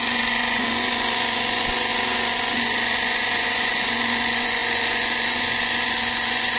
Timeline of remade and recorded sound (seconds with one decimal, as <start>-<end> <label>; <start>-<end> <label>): 0.0-6.6 remade